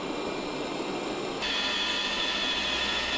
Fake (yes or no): no